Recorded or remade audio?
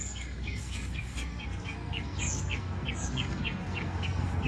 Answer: remade